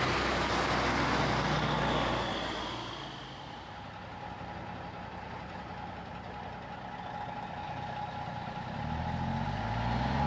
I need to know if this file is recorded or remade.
recorded